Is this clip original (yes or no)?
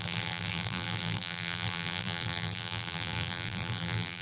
no